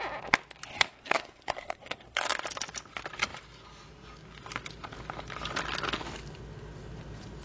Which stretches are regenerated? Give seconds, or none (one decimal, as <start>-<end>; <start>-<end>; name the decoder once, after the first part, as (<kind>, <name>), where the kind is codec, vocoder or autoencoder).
0.7-2.2 (codec, SNAC)